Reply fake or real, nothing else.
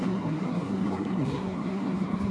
fake